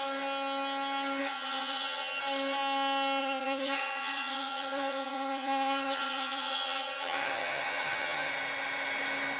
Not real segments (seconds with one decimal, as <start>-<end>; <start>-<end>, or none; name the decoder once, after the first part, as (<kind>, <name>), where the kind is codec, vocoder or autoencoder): 1.2-2.2 (vocoder, HiFi-GAN); 3.2-8.3